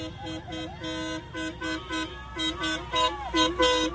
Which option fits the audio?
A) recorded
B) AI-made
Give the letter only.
A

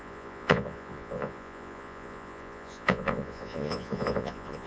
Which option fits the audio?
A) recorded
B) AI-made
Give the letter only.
B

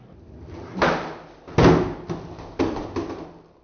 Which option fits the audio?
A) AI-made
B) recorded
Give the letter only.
B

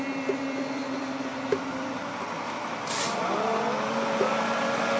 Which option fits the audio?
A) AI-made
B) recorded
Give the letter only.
B